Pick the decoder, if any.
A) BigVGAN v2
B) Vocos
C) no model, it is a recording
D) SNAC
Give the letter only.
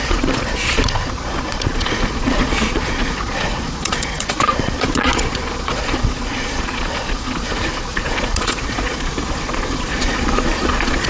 B